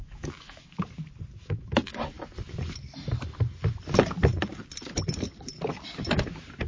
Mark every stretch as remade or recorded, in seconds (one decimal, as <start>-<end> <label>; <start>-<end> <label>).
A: 0.0-0.8 remade; 0.8-1.4 recorded; 1.4-1.9 remade; 1.9-6.7 recorded